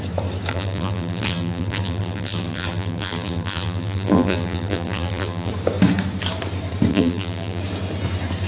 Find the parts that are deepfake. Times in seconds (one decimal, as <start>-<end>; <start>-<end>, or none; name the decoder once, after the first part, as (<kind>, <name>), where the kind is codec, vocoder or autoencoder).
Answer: 0.5-5.5 (vocoder, BigVGAN v2); 6.9-7.6